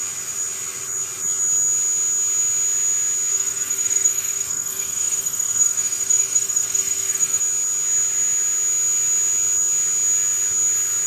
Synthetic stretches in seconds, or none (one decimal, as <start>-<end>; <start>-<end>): 3.3-7.4